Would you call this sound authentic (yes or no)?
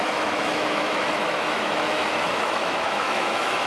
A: no